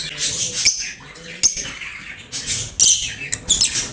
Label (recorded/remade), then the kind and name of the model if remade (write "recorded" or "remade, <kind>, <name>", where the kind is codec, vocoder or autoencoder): recorded